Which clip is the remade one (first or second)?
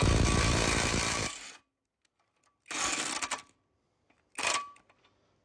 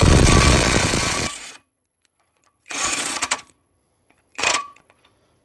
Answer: second